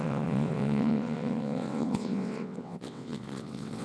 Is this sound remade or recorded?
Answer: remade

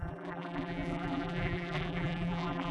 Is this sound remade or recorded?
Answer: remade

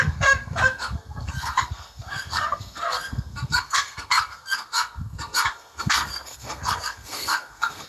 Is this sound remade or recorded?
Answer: remade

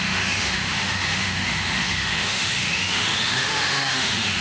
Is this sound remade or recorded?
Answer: remade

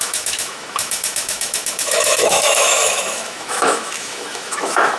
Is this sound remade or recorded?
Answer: remade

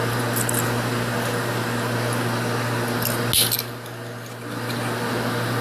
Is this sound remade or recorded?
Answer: recorded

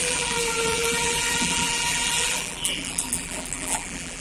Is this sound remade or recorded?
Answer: remade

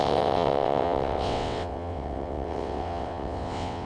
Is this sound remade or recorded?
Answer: remade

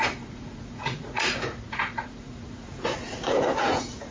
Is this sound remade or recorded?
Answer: remade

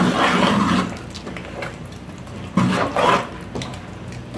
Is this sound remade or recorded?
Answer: recorded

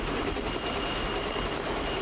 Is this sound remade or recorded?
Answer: recorded